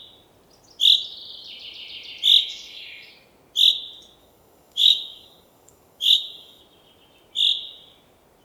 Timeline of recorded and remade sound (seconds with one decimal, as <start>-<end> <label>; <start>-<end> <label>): 0.0-2.4 recorded; 2.4-3.1 remade; 3.1-4.2 recorded; 4.2-6.6 remade; 6.6-8.4 recorded